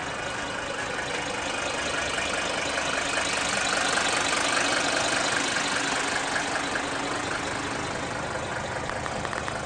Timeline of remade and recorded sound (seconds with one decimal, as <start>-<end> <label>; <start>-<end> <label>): 0.0-9.7 recorded